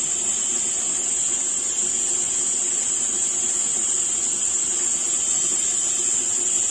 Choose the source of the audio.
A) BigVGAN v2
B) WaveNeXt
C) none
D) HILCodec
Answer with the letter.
C